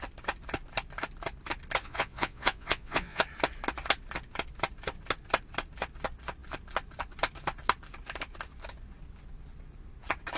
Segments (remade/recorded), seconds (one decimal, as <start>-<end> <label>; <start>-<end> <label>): 0.0-1.8 recorded; 1.8-3.2 remade; 3.2-10.4 recorded